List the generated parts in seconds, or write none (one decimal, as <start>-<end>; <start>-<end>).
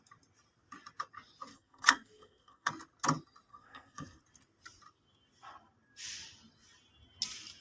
1.5-2.7; 3.5-4.2